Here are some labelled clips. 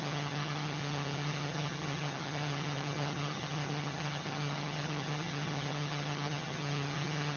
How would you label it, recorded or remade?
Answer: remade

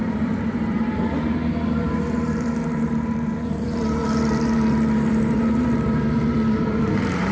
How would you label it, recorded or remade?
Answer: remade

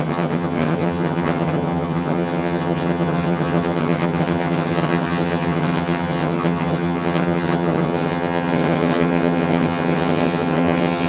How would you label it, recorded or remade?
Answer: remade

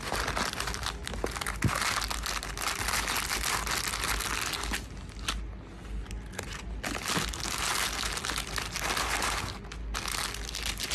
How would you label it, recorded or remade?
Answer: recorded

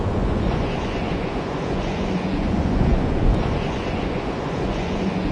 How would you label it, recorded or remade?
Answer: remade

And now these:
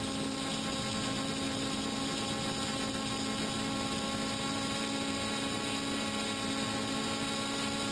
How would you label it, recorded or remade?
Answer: recorded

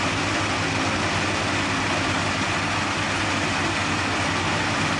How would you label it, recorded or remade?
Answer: recorded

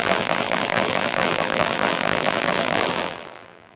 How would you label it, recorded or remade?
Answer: remade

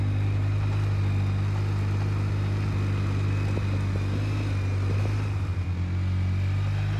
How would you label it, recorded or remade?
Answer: recorded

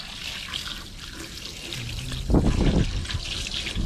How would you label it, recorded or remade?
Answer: recorded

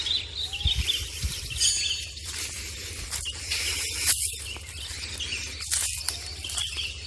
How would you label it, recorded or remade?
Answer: recorded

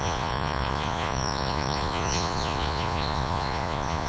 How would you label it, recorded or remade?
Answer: remade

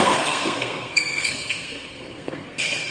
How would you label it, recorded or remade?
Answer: remade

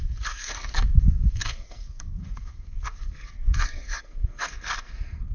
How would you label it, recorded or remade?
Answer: remade